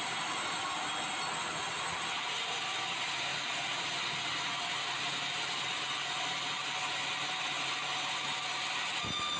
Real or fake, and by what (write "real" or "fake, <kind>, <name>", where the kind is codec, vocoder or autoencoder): real